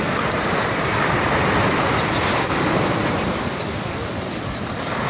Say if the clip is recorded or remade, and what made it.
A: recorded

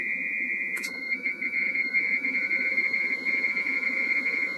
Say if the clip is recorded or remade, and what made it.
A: remade, vocoder, Vocos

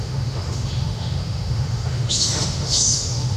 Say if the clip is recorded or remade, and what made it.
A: remade, autoencoder, DAC-VAE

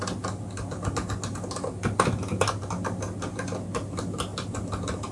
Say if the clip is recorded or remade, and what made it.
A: recorded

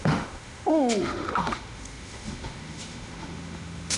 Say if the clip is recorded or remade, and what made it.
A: remade, autoencoder, DAC-VAE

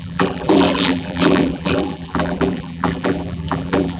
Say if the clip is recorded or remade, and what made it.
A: remade, vocoder, BigVGAN v2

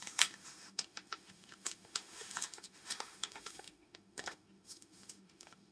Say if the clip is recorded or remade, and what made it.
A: remade, autoencoder, DAC-VAE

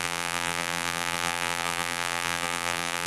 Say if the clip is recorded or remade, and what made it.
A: remade, vocoder, BigVGAN v2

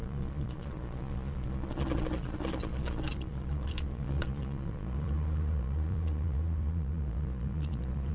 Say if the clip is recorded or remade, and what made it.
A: remade, vocoder, Vocos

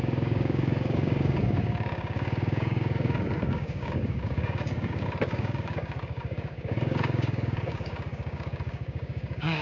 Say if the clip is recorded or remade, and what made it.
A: remade, codec, DAC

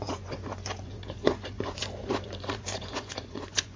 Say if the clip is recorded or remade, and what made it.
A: remade, vocoder, Vocos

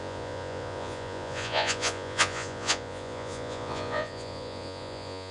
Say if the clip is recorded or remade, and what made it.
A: remade, vocoder, Vocos